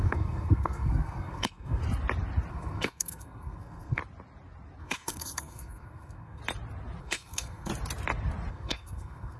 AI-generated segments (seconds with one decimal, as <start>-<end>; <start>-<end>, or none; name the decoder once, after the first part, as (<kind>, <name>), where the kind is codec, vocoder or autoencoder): 0.0-1.8 (codec, SNAC); 2.5-4.0; 4.8-6.4; 7.0-7.7; 8.5-9.4